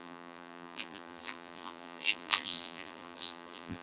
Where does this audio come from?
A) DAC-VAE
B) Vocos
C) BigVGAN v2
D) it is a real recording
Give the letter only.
C